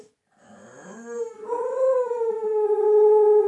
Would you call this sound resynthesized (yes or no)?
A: no